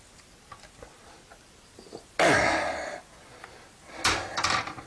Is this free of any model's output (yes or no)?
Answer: yes